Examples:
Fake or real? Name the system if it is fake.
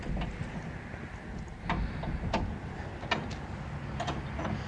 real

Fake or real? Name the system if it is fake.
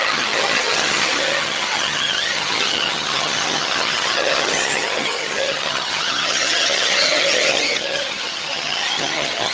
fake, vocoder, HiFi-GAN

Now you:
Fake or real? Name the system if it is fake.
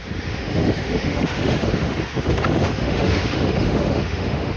fake, autoencoder, DAC-VAE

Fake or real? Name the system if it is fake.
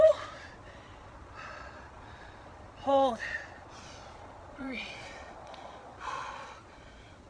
fake, vocoder, Vocos